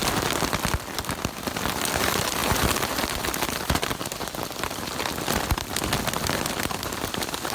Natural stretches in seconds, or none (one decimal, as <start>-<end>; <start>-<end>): 0.0-2.0